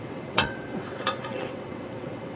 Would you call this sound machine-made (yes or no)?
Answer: yes